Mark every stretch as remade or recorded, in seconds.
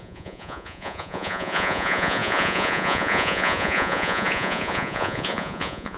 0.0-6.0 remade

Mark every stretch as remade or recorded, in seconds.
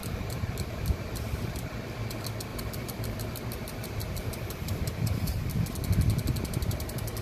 0.0-1.2 remade; 1.2-2.5 recorded; 2.5-5.5 remade; 5.5-7.2 recorded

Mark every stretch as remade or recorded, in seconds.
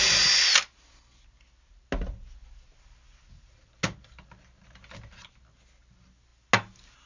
0.0-7.1 recorded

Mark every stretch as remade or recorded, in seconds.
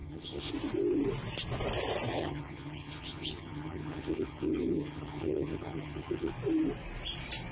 0.0-0.5 remade; 0.5-2.1 recorded; 2.1-6.3 remade; 6.3-7.5 recorded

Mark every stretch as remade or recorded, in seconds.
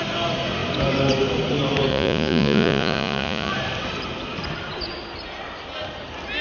0.0-1.9 recorded; 1.9-3.5 remade; 3.5-6.4 recorded